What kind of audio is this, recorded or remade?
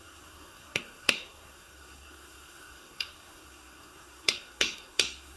remade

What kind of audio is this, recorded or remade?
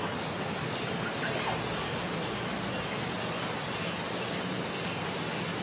recorded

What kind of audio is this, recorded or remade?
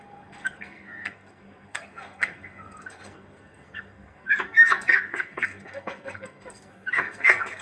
remade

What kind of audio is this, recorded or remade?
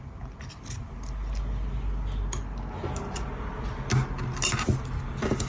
recorded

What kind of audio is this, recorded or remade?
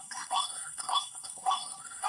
remade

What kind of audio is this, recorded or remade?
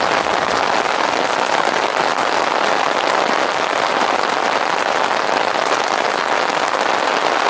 recorded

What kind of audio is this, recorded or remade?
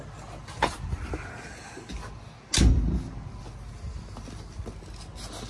recorded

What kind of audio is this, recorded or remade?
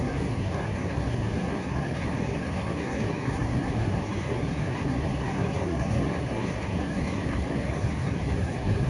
remade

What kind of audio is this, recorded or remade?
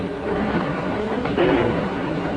remade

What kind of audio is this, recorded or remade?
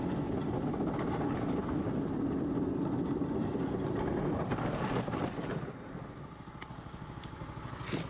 recorded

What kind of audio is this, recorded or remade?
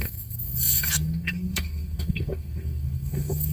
remade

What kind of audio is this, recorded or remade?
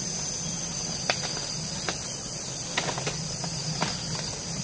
recorded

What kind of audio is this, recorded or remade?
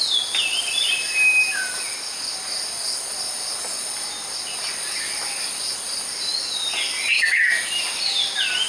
recorded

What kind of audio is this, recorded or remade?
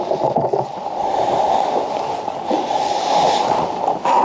recorded